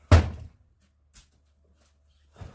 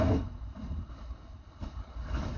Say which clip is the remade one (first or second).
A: second